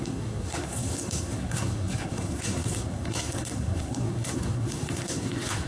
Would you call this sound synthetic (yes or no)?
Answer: yes